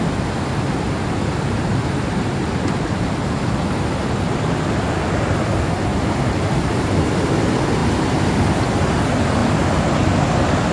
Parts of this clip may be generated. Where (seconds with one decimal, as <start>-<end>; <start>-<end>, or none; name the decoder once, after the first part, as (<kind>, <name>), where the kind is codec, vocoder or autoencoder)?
1.7-2.4 (vocoder, BigVGAN v2); 5.9-6.9; 9.4-9.9